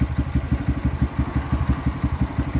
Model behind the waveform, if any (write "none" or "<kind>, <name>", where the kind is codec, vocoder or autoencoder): none